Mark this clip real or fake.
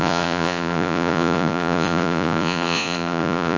fake